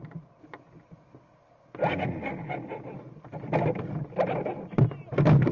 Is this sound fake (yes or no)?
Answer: no